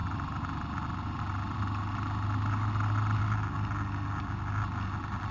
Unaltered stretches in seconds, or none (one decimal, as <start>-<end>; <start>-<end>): 0.0-5.3